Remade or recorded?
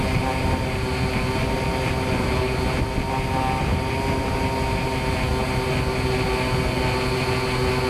recorded